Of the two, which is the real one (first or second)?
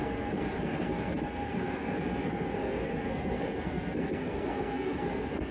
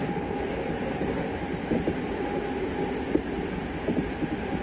second